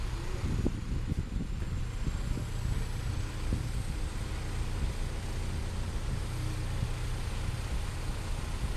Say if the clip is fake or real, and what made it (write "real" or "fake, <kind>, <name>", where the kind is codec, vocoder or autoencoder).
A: real